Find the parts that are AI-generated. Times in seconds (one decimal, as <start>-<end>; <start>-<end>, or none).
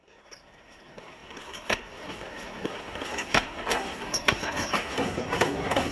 0.0-5.9